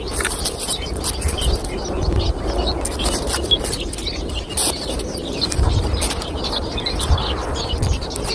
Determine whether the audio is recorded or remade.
recorded